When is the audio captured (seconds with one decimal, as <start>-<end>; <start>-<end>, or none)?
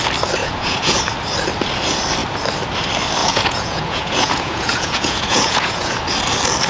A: 0.0-0.4; 1.0-3.2; 6.0-6.7